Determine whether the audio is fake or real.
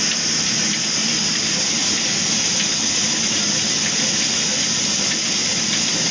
real